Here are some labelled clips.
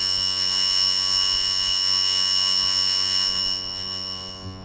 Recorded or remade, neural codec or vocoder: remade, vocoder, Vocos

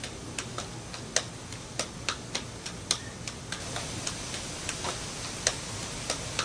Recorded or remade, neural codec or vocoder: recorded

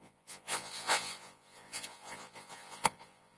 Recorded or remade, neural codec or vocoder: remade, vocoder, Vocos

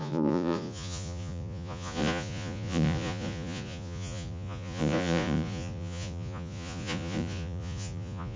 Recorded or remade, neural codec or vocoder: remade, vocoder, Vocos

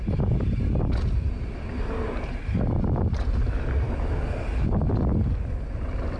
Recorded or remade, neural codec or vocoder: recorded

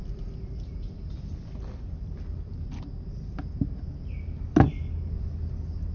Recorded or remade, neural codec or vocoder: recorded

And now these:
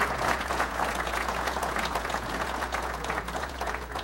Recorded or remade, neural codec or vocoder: remade, vocoder, Vocos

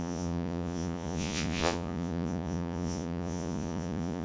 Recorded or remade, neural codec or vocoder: remade, vocoder, Vocos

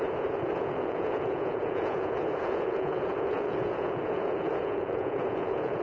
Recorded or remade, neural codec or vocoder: remade, vocoder, Vocos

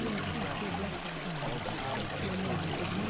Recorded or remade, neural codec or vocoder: recorded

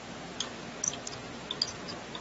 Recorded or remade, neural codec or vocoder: recorded